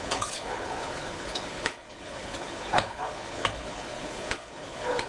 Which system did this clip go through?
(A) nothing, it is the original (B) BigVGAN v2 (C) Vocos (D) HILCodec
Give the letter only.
D